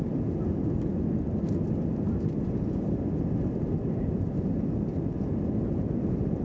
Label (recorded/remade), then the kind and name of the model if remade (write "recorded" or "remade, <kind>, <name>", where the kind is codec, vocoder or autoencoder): recorded